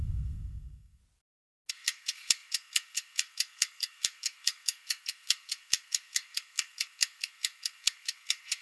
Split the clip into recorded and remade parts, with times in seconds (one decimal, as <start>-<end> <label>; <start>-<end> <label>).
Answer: 0.0-1.0 remade; 1.0-1.7 recorded; 1.7-8.6 remade